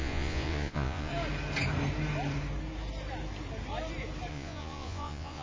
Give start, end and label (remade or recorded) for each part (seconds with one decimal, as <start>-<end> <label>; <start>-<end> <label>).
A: 0.0-1.1 remade; 1.1-4.3 recorded; 4.3-5.4 remade